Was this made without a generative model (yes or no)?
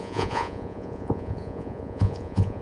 no